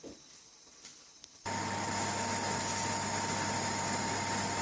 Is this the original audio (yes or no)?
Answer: no